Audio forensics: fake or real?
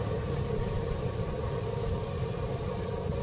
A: real